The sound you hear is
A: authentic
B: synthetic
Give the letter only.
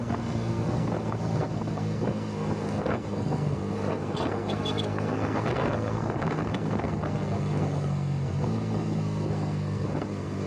B